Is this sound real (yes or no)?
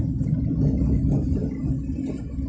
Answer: yes